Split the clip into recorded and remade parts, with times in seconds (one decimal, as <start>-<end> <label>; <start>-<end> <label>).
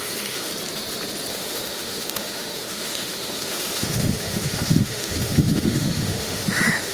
0.0-0.5 remade; 0.5-1.3 recorded; 1.3-6.9 remade